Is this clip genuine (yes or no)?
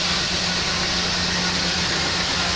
yes